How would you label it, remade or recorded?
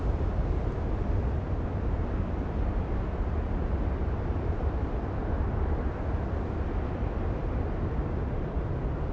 recorded